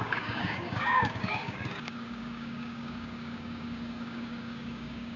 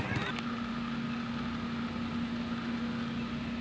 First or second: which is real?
second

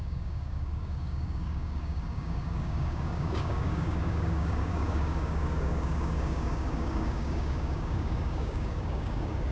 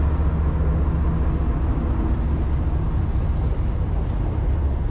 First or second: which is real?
second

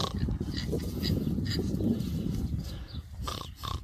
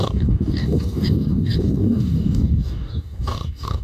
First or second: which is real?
first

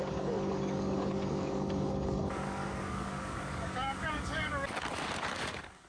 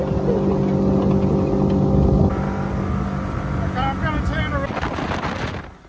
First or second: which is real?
second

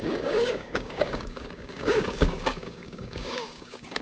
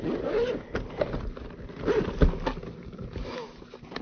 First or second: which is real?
second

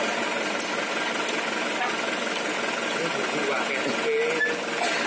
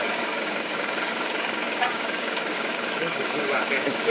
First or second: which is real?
first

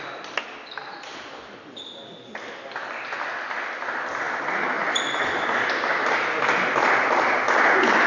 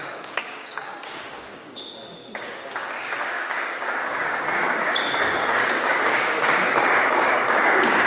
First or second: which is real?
first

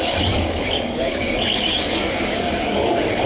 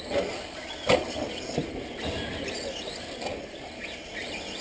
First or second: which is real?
second